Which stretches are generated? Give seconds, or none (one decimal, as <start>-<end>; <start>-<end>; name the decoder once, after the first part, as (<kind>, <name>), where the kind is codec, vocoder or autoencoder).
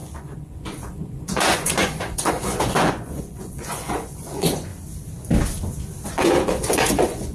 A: 0.0-4.7 (vocoder, Vocos); 6.1-7.3